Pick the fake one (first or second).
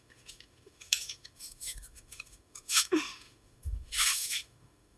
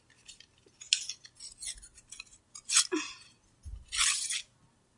first